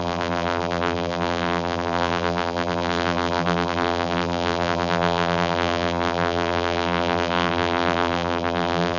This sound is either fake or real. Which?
fake